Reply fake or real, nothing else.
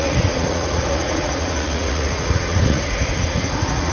fake